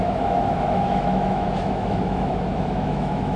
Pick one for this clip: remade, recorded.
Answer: remade